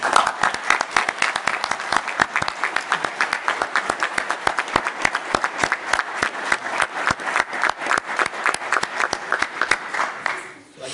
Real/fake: real